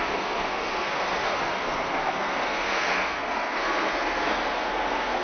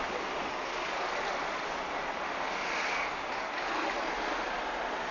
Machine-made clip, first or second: first